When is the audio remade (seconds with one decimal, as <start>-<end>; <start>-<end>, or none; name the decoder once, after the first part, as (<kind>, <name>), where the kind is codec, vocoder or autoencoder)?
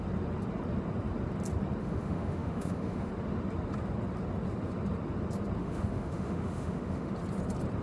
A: 1.8-3.1 (autoencoder, DAC-VAE); 5.6-7.1